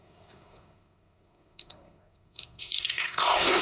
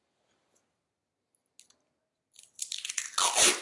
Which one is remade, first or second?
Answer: first